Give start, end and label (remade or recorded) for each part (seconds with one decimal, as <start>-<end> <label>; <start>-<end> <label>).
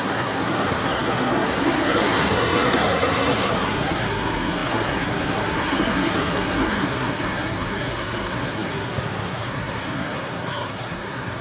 0.0-11.4 remade